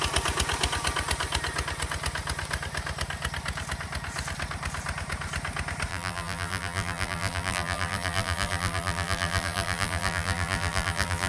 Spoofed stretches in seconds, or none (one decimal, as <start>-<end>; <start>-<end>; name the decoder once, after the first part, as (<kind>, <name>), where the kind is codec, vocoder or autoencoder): 5.9-11.3 (vocoder, BigVGAN v2)

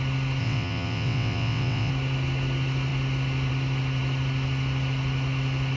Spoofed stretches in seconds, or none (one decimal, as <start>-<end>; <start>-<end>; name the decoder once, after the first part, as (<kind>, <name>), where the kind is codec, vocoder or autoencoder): 0.4-1.9 (vocoder, WaveNeXt)

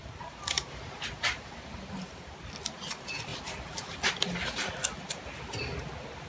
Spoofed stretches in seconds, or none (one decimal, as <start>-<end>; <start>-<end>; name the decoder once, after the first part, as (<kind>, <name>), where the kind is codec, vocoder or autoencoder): 0.0-2.3 (vocoder, BigVGAN v2); 3.3-4.1

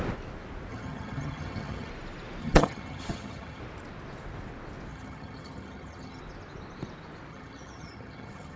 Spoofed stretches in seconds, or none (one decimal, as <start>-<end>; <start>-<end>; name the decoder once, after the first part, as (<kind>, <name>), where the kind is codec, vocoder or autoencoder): 0.7-1.9 (vocoder, HiFi-GAN); 2.4-3.6; 4.9-6.2; 7.3-8.6

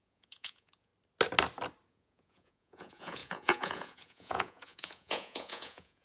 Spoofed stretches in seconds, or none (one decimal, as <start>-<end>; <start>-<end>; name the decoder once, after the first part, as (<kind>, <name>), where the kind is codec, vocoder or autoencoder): 0.0-0.9 (vocoder, Vocos); 1.9-6.0

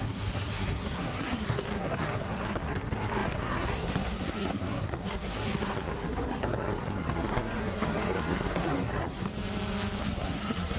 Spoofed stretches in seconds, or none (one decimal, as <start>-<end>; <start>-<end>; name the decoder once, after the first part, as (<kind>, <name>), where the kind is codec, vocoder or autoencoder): 0.0-9.3 (codec, SNAC); 10.0-10.8